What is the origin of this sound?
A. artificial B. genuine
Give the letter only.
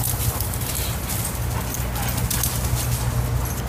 B